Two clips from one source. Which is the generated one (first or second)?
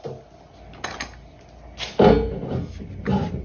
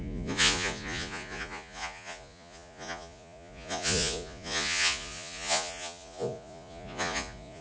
second